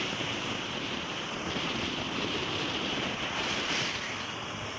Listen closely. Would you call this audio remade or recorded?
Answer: remade